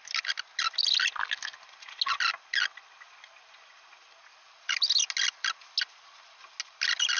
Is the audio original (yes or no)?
yes